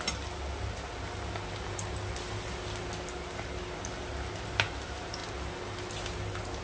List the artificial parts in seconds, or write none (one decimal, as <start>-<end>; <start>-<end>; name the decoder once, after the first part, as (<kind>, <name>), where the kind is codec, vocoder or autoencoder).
none